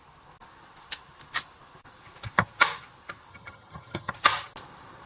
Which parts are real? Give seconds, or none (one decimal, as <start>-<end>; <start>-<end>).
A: 0.0-3.3; 4.1-5.1